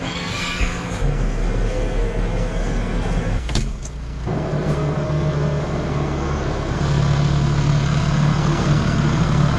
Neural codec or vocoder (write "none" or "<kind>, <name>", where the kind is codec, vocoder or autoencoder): codec, SNAC